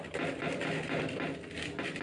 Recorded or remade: recorded